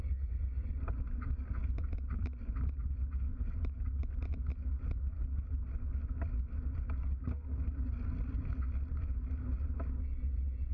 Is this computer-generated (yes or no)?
no